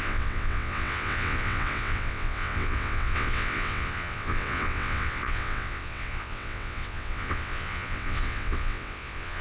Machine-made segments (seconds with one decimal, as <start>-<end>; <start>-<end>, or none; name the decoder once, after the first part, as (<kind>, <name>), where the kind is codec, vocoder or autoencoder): 0.0-9.4 (vocoder, WaveNeXt)